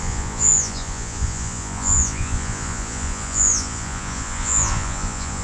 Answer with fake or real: fake